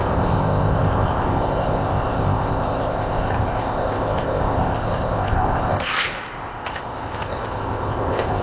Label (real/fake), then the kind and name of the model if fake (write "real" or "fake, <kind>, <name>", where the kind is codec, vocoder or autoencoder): fake, codec, ZipCodec